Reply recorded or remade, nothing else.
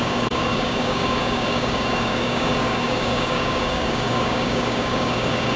remade